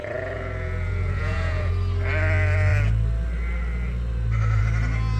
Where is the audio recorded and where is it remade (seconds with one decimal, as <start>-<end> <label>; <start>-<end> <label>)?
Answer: 0.0-1.7 remade; 1.7-5.2 recorded